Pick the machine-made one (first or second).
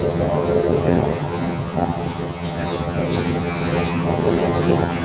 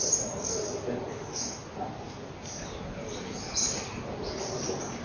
first